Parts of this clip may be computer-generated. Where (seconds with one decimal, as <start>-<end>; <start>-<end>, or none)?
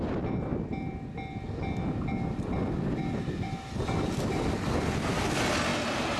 none